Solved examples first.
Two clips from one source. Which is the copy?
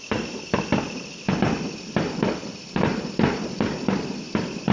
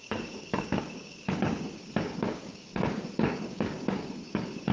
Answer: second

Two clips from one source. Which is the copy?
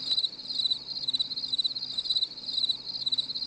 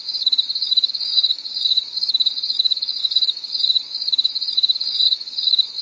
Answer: second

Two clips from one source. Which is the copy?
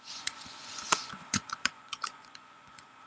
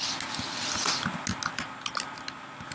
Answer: first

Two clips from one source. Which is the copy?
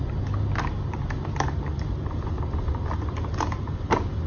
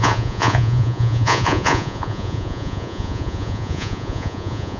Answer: second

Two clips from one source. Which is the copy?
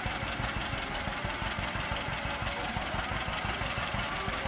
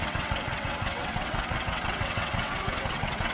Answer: second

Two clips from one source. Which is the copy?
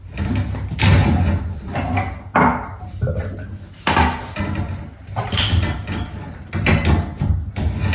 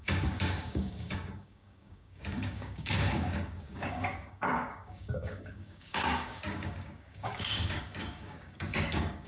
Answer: second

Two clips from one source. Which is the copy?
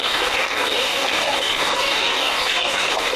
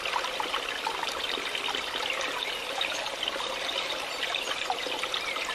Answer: first